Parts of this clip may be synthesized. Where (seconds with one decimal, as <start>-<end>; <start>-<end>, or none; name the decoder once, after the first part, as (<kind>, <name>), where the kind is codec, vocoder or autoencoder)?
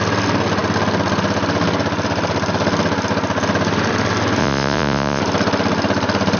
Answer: 4.4-5.2 (vocoder, Vocos)